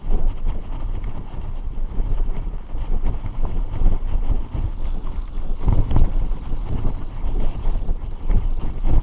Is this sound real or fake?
real